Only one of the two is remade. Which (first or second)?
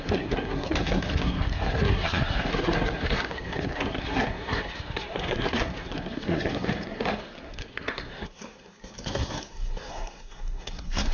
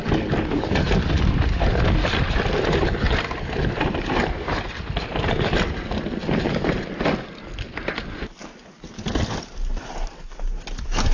first